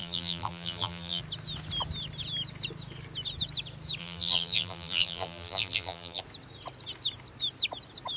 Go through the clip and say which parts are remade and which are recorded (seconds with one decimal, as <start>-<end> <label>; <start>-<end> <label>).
0.0-1.2 remade; 1.2-4.0 recorded; 4.0-6.2 remade; 6.2-8.2 recorded